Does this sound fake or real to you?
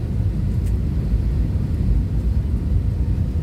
real